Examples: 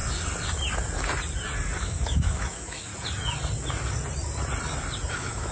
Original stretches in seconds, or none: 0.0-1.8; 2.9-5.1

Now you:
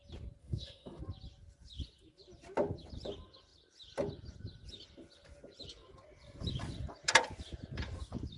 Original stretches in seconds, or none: 0.0-0.4; 1.0-8.4

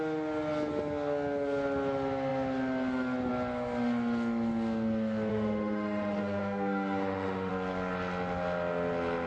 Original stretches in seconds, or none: 0.0-5.3; 7.5-9.3

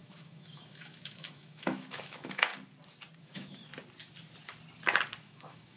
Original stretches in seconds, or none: 2.5-3.2; 3.6-5.2

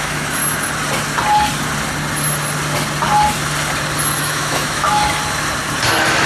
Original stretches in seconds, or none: 0.4-4.2; 5.0-6.3

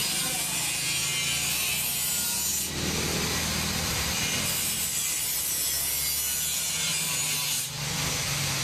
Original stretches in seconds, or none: 0.0-8.6